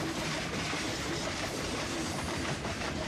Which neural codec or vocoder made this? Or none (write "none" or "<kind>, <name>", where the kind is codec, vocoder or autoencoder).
vocoder, BigVGAN v2